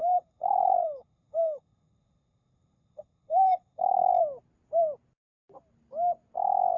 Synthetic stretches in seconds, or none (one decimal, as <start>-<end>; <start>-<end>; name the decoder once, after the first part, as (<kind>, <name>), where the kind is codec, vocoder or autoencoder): 0.0-4.1 (codec, HILCodec)